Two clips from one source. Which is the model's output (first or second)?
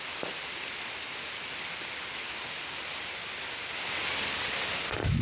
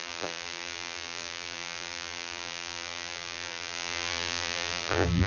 second